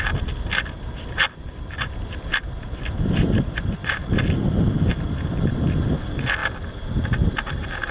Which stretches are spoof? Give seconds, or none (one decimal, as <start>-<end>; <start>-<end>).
none